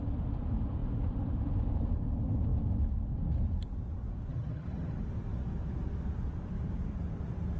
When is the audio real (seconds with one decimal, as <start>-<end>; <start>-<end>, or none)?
0.0-4.3; 5.0-7.6